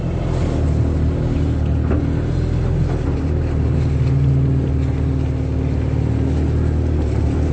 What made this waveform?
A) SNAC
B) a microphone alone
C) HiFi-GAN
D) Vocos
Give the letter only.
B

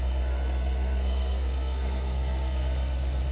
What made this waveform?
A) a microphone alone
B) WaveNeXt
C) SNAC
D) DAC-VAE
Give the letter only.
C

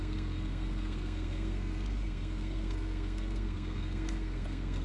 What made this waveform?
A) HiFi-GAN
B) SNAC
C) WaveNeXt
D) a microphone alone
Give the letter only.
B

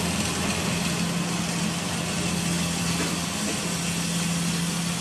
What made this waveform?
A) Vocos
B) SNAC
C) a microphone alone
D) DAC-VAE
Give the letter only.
C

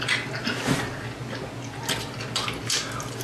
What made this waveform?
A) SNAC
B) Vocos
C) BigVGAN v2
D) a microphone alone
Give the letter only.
D